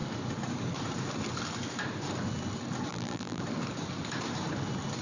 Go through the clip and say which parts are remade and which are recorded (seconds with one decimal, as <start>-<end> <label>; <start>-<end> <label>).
0.0-2.9 recorded; 2.9-3.4 remade; 3.4-5.0 recorded